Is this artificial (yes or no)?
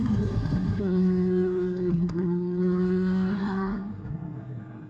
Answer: yes